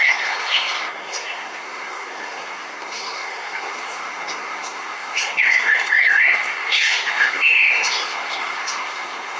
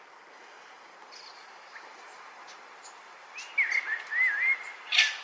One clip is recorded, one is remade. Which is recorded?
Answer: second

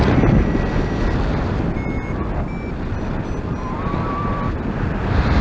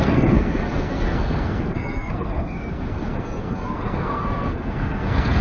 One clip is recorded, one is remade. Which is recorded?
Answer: first